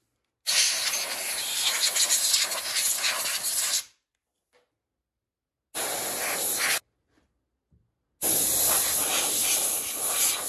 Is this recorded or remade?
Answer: recorded